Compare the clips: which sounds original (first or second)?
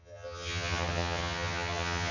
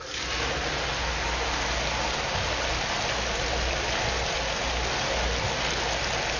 second